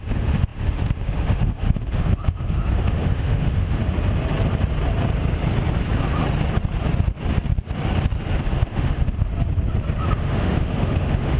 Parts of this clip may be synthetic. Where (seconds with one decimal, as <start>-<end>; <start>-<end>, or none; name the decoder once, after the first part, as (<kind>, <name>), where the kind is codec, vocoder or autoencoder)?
0.0-3.8 (autoencoder, DAC-VAE); 8.4-9.3; 10.2-11.4

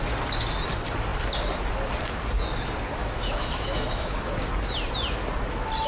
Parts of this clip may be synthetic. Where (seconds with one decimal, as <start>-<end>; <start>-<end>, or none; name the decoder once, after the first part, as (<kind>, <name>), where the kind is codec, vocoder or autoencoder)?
3.0-4.3 (autoencoder, DAC-VAE)

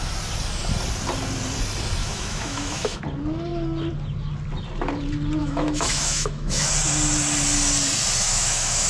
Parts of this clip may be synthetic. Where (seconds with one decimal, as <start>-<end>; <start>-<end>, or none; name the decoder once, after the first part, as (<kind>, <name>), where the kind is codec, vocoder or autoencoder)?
2.0-3.0 (autoencoder, DAC-VAE); 5.4-6.7; 8.2-8.9

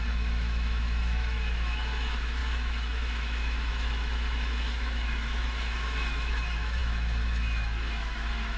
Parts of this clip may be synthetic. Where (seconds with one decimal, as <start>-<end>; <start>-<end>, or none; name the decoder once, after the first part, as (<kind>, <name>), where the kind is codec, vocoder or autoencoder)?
0.0-8.6 (autoencoder, DAC-VAE)

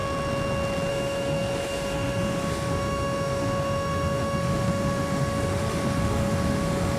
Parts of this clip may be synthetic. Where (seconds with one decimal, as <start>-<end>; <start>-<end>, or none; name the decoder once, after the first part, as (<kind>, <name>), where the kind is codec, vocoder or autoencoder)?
0.9-7.0 (autoencoder, DAC-VAE)

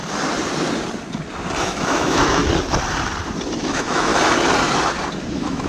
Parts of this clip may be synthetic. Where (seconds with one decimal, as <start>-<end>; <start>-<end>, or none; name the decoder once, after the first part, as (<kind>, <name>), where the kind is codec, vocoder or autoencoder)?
1.6-2.4 (autoencoder, DAC-VAE); 3.6-4.1; 5.3-5.7